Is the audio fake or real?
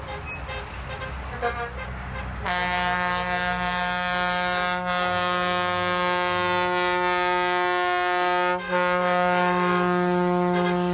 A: real